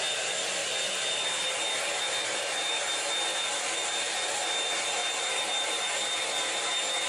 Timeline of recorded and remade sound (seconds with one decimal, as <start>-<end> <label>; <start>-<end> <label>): 0.0-7.1 recorded